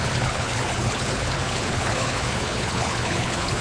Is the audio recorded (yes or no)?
no